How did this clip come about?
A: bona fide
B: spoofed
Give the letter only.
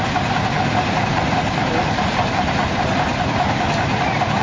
A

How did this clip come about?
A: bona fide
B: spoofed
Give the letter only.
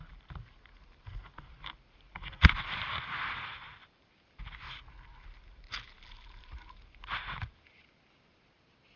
A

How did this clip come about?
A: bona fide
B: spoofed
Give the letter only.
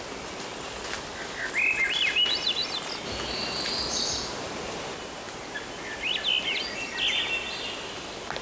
A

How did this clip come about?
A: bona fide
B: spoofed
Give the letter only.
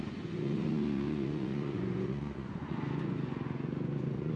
B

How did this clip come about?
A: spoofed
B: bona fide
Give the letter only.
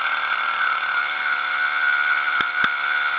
B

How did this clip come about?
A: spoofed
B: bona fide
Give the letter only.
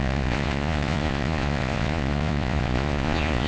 A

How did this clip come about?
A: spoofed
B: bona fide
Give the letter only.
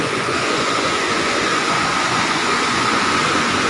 A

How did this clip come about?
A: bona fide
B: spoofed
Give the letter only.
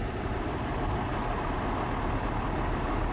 A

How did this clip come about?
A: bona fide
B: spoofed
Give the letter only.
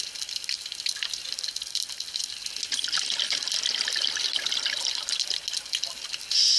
A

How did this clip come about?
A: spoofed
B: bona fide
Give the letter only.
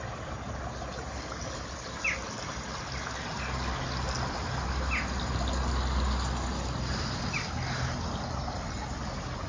B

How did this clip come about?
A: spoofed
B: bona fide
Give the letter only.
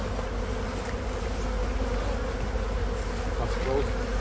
B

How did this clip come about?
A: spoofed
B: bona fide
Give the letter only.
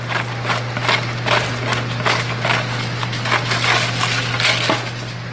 B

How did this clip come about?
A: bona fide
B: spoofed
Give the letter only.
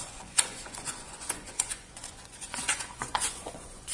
B